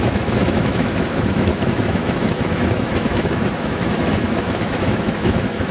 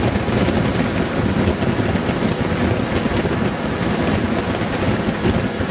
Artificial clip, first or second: first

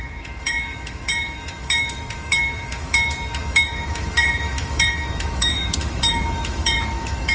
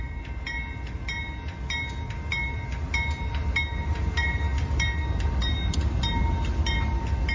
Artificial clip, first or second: first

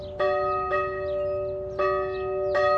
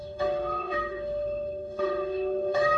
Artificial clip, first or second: second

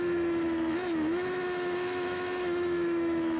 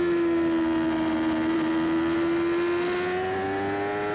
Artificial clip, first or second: first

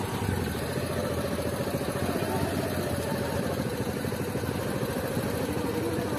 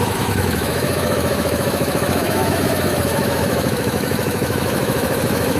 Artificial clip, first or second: second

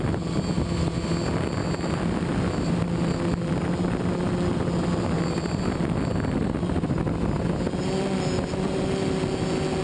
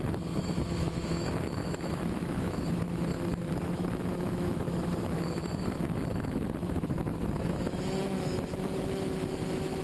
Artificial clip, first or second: second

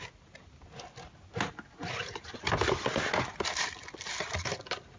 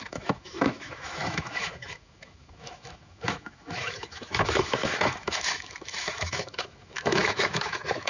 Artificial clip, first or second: second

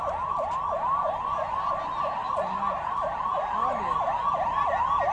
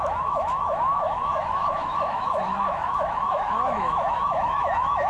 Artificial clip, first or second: second